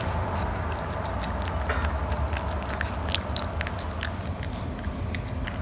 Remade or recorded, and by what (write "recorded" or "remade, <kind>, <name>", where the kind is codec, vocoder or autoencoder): recorded